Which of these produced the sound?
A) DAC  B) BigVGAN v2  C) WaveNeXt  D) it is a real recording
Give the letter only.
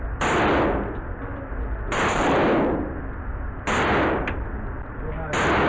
D